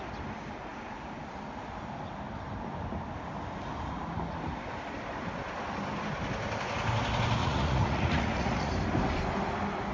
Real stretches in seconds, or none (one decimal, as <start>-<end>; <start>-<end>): 0.0-7.4; 8.7-9.9

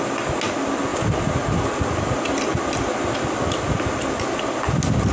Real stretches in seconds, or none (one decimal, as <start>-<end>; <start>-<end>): 0.0-5.1

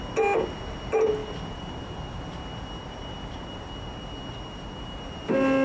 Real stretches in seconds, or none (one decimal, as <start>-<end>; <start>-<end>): 0.0-5.6